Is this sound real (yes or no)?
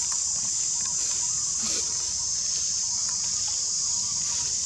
yes